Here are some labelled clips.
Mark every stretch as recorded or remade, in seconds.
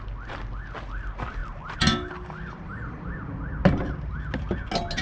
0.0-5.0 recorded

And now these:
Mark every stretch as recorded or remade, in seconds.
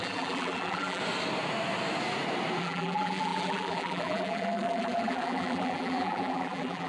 0.0-1.0 remade; 1.0-2.6 recorded; 2.6-6.9 remade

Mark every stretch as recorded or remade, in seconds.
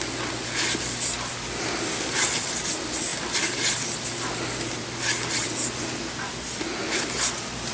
0.0-7.7 recorded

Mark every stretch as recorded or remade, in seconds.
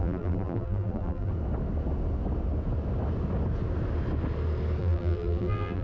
0.0-1.3 remade; 1.3-4.8 recorded; 4.8-5.8 remade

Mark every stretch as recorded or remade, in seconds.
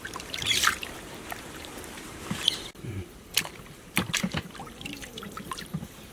0.0-6.1 remade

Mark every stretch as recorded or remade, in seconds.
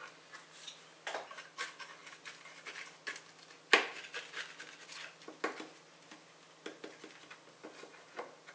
0.0-8.5 recorded